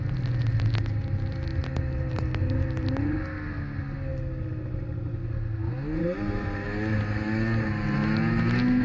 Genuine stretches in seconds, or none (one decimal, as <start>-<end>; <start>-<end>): 0.0-8.8